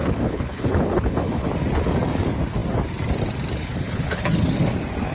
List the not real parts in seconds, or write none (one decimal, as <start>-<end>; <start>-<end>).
0.0-1.5; 3.6-4.2